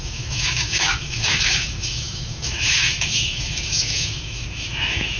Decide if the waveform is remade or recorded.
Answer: remade